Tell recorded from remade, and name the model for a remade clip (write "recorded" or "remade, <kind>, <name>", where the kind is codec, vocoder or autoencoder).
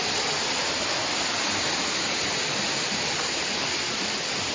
recorded